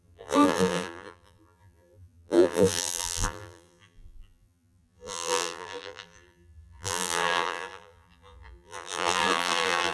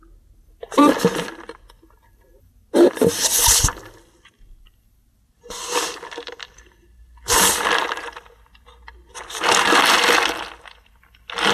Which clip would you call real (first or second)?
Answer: second